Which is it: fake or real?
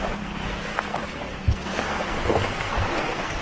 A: fake